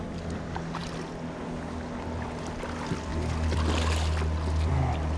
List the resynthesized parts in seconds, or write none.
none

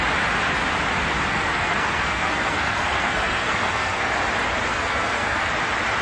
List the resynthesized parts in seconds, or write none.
1.3-4.1 (codec, SNAC); 4.7-5.5

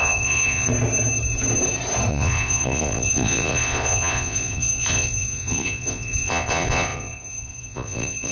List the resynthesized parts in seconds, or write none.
0.0-0.7 (vocoder, Vocos); 2.1-8.3